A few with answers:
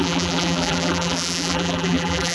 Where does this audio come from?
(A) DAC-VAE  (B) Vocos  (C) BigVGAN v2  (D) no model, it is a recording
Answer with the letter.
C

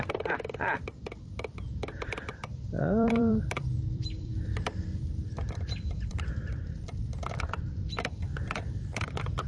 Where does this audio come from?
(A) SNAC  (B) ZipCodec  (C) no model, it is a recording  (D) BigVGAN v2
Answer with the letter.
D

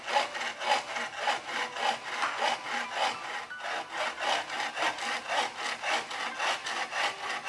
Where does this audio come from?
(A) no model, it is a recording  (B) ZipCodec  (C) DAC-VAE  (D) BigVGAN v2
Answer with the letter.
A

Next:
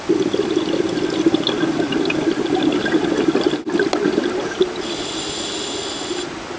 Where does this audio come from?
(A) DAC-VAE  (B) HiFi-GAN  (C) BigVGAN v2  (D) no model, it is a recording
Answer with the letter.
D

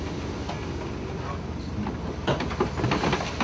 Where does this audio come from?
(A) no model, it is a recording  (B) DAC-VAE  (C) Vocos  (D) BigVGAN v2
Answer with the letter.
A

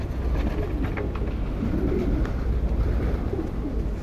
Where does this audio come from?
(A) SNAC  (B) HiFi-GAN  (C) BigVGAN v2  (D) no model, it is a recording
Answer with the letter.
D